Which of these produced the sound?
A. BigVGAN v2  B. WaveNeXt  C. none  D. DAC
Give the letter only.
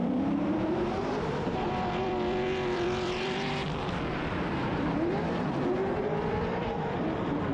A